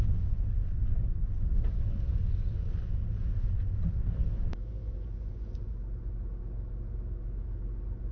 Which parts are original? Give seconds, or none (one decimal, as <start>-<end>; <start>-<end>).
0.0-4.7; 5.7-8.1